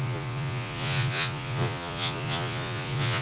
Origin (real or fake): fake